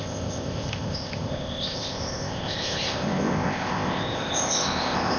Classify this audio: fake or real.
fake